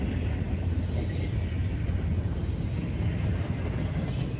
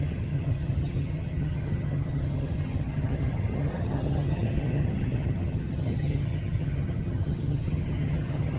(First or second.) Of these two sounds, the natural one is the first